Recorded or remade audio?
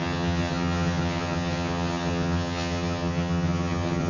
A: remade